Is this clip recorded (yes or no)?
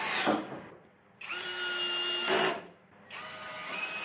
yes